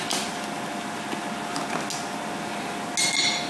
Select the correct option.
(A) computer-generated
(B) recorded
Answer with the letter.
B